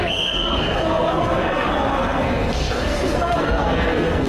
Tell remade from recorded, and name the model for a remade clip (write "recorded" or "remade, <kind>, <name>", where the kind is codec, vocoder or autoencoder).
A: remade, codec, SNAC